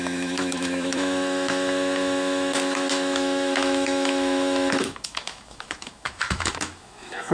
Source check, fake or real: fake